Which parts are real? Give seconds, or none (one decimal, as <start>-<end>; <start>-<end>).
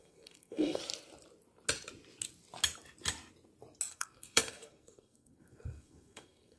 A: 0.8-3.9